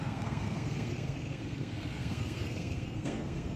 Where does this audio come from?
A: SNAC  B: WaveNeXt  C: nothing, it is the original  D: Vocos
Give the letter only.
A